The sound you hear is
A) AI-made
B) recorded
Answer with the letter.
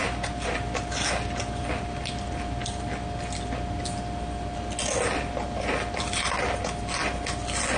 B